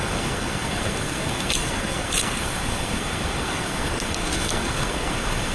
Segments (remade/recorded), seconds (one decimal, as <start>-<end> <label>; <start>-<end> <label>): 0.0-5.5 remade